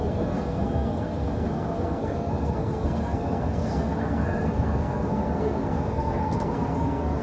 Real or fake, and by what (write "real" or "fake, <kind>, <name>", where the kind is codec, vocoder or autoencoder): fake, codec, SNAC